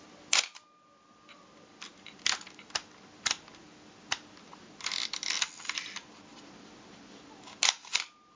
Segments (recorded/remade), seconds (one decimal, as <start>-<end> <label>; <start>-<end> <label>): 0.0-8.4 recorded